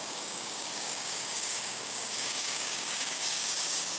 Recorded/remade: remade